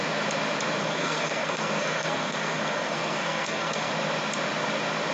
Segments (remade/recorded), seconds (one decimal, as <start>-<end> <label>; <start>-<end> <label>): 0.0-0.8 recorded; 0.8-3.9 remade; 3.9-5.1 recorded